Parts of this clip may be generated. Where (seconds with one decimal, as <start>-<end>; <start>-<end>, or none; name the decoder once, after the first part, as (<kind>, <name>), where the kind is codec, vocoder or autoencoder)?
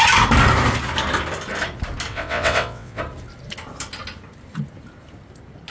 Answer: 2.1-3.0 (vocoder, WaveNeXt)